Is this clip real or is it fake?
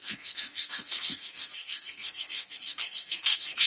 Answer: fake